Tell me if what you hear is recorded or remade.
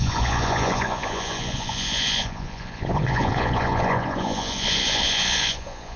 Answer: remade